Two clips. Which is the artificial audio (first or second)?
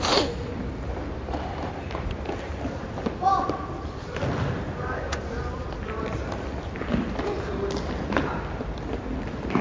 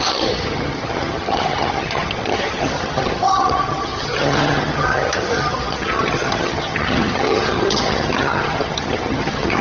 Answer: second